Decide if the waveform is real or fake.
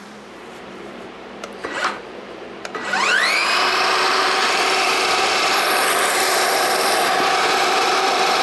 fake